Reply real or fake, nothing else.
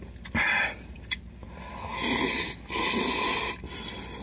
real